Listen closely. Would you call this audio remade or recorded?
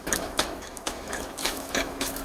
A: remade